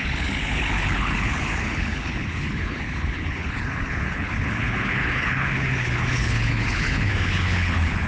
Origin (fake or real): fake